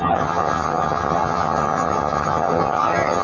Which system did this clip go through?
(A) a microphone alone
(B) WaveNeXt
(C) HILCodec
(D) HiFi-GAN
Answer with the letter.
D